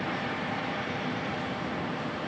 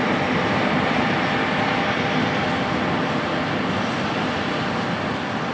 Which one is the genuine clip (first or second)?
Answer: second